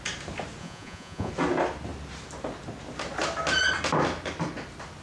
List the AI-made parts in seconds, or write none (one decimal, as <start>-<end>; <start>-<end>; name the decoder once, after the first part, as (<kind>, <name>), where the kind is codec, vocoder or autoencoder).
0.6-1.3 (vocoder, Vocos)